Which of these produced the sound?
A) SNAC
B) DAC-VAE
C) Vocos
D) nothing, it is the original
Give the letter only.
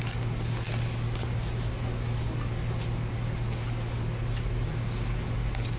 D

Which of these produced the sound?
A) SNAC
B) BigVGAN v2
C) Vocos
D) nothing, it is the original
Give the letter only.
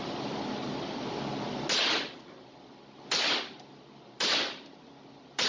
D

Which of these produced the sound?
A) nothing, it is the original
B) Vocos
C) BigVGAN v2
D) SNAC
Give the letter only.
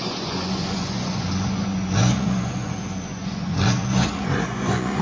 B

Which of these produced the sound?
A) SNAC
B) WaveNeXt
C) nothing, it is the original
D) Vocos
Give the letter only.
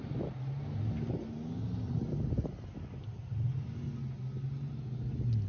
C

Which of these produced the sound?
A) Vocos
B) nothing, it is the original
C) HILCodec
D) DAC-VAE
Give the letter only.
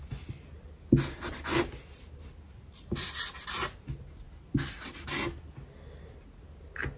B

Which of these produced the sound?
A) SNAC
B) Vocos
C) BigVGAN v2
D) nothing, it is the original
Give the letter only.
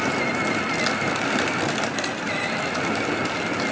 D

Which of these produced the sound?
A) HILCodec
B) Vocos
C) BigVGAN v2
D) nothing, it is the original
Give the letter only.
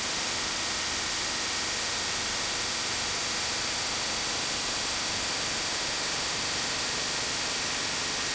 D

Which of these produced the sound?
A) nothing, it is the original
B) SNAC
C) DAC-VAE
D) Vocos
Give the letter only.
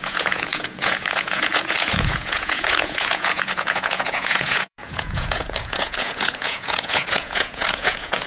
D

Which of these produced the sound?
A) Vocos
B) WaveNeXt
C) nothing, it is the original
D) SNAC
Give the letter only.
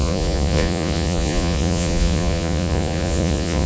A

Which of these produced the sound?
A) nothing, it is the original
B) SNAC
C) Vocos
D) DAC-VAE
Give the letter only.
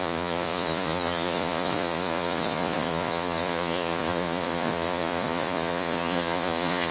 C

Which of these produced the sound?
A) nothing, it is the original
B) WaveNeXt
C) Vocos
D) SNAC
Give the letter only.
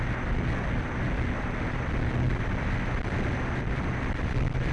A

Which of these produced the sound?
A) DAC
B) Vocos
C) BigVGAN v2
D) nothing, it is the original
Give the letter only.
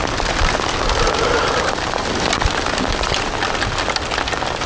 D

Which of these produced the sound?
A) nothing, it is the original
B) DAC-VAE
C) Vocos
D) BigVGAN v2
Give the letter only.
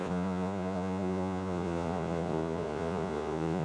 C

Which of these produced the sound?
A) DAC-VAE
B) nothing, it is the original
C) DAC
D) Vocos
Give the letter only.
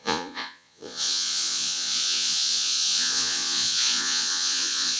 D